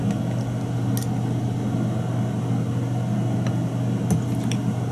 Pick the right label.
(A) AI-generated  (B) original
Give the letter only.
B